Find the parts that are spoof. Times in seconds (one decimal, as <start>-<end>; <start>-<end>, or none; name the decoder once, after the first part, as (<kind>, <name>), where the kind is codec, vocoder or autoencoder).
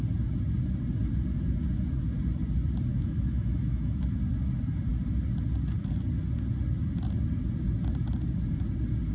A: 2.9-4.2 (autoencoder, DAC-VAE)